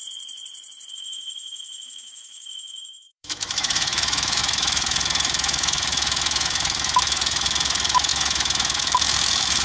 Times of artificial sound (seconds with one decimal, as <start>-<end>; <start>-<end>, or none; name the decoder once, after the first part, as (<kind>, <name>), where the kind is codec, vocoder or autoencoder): 0.9-9.6 (autoencoder, DAC-VAE)